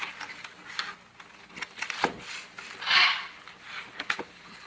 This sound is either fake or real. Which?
real